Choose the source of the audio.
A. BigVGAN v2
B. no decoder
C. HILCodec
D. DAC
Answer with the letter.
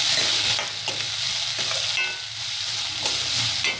B